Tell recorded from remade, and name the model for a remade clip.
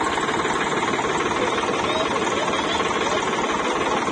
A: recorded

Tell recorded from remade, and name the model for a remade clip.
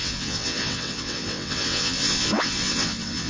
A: remade, vocoder, WaveNeXt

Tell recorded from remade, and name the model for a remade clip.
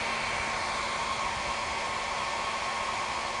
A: recorded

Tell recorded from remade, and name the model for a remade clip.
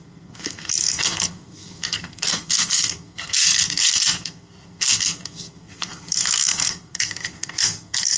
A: remade, codec, SNAC